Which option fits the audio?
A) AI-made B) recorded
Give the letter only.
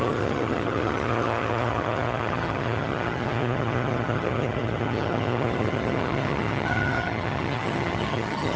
A